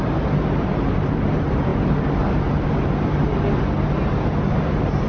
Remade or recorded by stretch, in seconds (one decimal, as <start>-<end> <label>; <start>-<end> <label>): 0.0-1.7 remade; 1.7-4.4 recorded; 4.4-5.1 remade